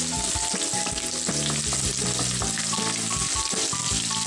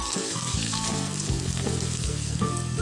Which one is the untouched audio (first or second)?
first